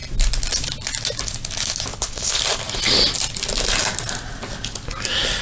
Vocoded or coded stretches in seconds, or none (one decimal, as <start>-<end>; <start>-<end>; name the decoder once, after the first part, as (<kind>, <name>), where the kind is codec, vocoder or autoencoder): 1.9-2.4 (codec, HILCodec)